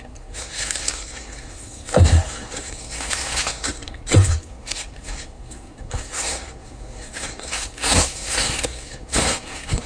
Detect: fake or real fake